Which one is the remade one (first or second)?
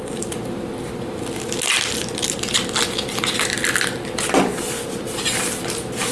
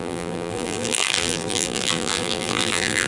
second